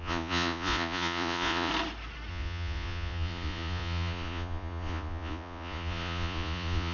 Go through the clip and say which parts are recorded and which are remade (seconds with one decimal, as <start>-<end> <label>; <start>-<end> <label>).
0.0-1.7 remade; 1.7-2.3 recorded; 2.3-6.9 remade